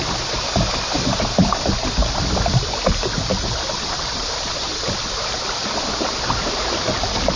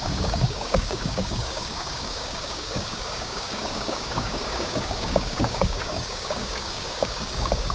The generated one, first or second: second